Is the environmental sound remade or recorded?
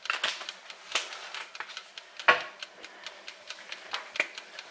recorded